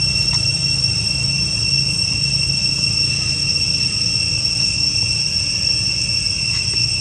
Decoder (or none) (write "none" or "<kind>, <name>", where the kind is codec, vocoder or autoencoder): none